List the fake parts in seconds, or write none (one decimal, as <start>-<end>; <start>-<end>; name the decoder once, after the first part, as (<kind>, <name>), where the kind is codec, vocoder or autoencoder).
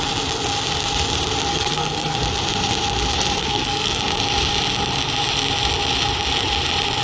1.5-2.2 (codec, SNAC); 3.4-4.0